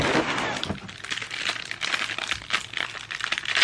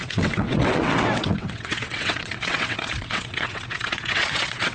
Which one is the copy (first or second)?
second